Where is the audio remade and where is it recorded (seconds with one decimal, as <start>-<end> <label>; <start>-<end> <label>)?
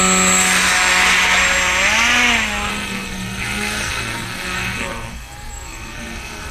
0.0-2.7 recorded; 2.7-6.5 remade